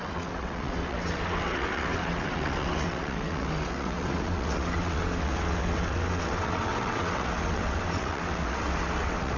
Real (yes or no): no